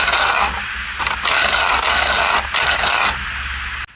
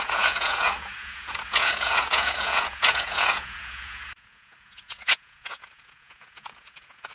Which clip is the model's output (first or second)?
second